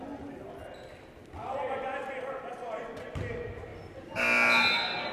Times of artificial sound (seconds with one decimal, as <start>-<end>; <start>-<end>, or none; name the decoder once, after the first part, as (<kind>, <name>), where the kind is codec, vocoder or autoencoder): none